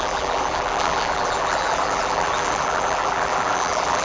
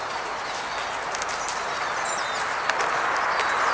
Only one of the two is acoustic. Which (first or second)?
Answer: second